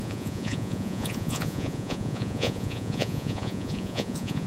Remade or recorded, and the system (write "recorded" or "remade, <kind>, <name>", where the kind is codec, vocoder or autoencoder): remade, vocoder, Vocos